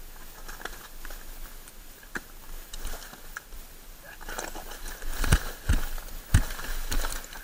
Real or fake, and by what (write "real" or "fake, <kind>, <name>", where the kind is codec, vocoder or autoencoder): real